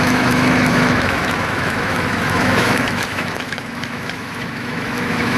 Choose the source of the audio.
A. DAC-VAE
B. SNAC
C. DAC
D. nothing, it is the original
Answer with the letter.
A